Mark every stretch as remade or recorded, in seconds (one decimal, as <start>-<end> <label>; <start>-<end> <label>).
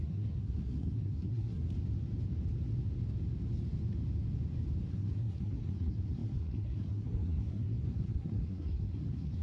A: 0.0-1.6 remade; 1.6-4.9 recorded; 4.9-9.4 remade